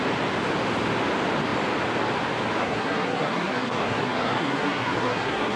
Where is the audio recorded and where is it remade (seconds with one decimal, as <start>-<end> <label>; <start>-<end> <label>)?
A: 0.0-2.6 recorded; 2.6-5.6 remade